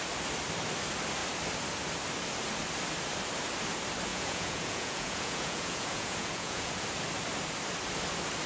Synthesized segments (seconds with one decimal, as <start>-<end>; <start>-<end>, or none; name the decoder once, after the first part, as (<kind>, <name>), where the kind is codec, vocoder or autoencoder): 4.1-6.7 (vocoder, Vocos)